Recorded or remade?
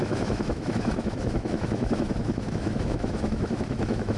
remade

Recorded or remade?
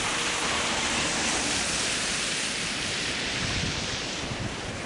remade